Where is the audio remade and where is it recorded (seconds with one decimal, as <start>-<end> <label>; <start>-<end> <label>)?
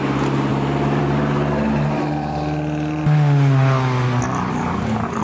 0.0-4.5 recorded; 4.5-5.2 remade